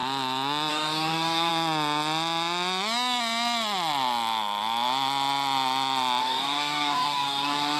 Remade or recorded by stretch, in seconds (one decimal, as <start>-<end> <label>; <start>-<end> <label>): 0.0-0.7 recorded; 0.7-1.5 remade; 1.5-6.2 recorded; 6.2-7.8 remade